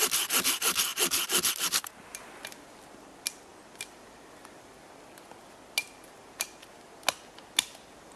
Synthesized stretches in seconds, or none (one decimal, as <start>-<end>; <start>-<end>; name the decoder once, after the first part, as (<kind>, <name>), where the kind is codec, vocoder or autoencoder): 3.5-4.7 (vocoder, BigVGAN v2)